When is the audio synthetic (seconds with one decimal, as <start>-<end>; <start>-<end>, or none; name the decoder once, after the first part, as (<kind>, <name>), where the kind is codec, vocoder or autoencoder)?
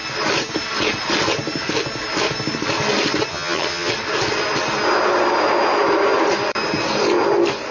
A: 3.3-3.9 (vocoder, HiFi-GAN)